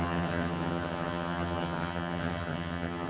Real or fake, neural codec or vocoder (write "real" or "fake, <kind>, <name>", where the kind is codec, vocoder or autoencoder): fake, vocoder, HiFi-GAN